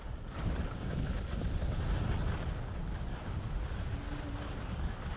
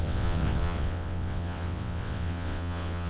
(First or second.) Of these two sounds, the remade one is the second